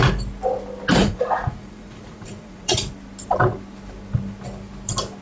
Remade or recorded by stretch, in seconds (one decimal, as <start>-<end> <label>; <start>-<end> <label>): 0.0-1.0 recorded; 1.0-2.8 remade; 2.8-5.2 recorded